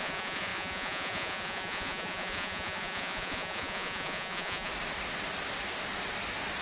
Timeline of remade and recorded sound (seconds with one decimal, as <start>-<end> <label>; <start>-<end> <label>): 0.0-4.7 remade; 4.7-6.6 recorded